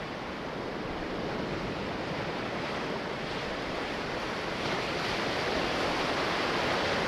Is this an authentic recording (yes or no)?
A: yes